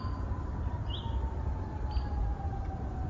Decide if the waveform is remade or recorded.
recorded